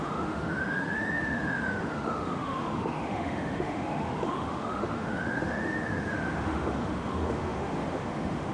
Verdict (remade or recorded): remade